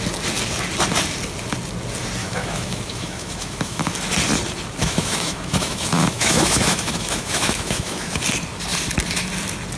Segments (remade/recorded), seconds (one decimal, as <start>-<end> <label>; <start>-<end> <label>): 0.0-2.2 recorded; 2.2-3.8 remade; 3.8-4.8 recorded; 4.8-8.2 remade; 8.2-9.8 recorded